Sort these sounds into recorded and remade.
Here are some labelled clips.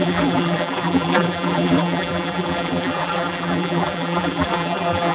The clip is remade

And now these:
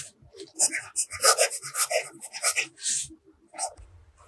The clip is recorded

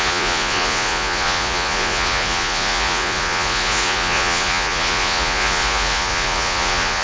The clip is remade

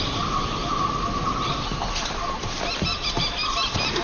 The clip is recorded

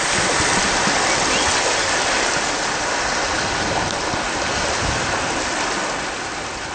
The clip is recorded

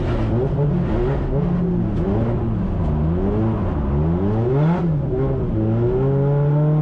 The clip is recorded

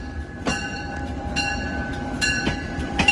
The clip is remade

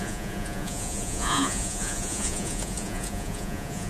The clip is remade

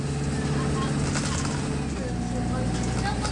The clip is recorded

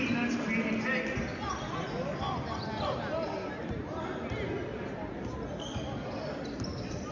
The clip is recorded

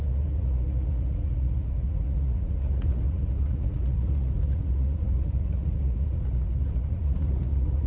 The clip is remade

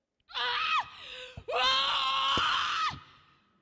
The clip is recorded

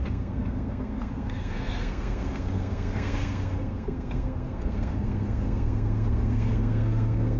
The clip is remade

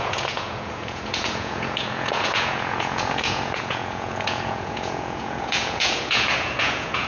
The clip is remade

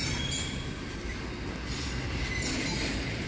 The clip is recorded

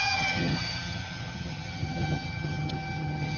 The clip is remade